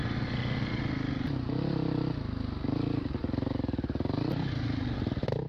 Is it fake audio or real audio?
real